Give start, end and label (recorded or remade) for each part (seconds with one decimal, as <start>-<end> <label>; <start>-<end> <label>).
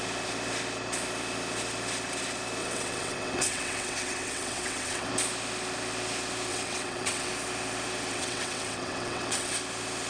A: 0.0-2.6 recorded; 2.6-5.1 remade; 5.1-6.5 recorded; 6.5-7.3 remade; 7.3-8.1 recorded; 8.1-9.5 remade; 9.5-10.1 recorded